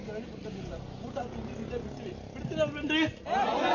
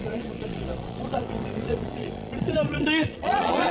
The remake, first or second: second